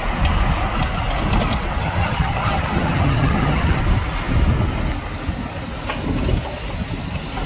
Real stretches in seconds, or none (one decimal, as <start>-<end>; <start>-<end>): 0.0-1.8; 3.8-7.5